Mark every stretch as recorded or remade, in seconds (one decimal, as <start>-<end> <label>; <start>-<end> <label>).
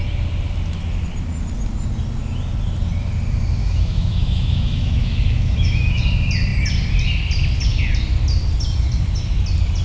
0.0-3.6 recorded; 3.6-6.0 remade; 6.0-9.8 recorded